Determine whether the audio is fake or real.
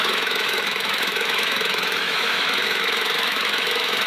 fake